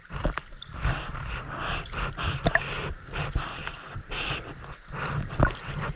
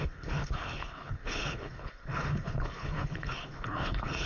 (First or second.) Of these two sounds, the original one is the first